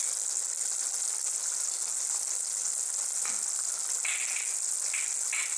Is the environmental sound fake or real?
real